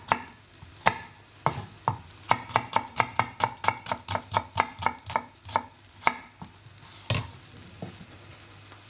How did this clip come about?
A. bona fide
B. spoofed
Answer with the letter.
A